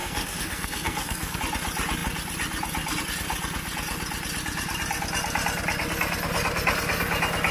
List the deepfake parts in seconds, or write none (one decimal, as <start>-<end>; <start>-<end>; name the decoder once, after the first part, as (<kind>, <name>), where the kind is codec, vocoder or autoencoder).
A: 0.0-1.4 (codec, SNAC)